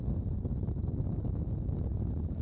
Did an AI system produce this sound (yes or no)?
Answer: no